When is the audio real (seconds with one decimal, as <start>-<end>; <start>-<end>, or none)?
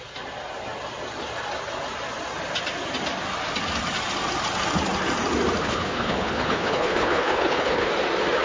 0.0-5.6; 7.9-8.4